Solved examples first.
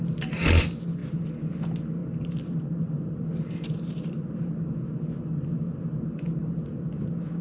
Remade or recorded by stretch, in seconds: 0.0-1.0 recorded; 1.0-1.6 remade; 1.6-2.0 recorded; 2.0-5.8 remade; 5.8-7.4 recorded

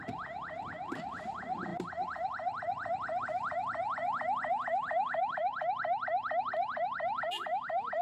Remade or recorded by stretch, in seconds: 0.0-5.5 remade; 5.5-6.4 recorded; 6.4-8.0 remade

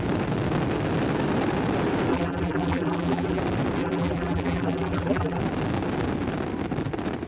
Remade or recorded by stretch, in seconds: 0.0-2.1 recorded; 2.1-3.4 remade; 3.4-3.8 recorded; 3.8-5.4 remade; 5.4-7.3 recorded

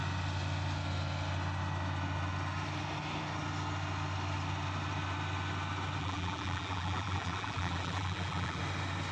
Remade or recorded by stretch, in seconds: 0.0-6.0 recorded; 6.0-8.6 remade; 8.6-9.1 recorded

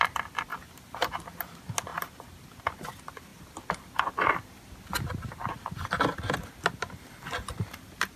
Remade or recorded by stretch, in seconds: 0.0-8.2 recorded

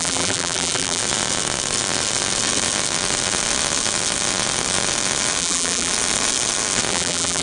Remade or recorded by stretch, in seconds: 0.0-1.0 remade; 1.0-5.4 recorded; 5.4-5.9 remade; 5.9-6.9 recorded; 6.9-7.4 remade

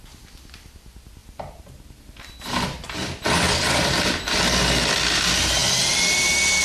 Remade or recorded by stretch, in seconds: 0.0-1.2 recorded; 1.2-2.0 remade; 2.0-6.6 recorded